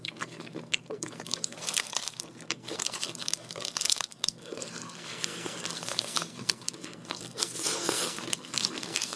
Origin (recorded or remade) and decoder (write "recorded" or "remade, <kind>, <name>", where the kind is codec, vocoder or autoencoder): remade, codec, SNAC